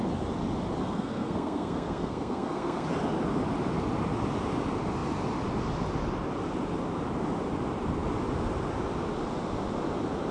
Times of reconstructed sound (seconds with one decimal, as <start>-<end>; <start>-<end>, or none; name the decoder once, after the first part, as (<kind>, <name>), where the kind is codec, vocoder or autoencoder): 0.8-2.9 (codec, SNAC)